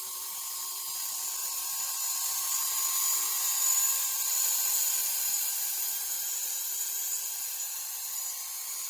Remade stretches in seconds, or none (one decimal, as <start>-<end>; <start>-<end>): 1.4-2.6; 3.7-8.3